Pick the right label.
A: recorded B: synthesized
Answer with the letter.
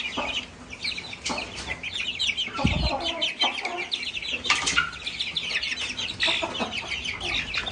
A